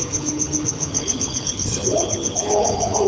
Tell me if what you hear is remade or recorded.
remade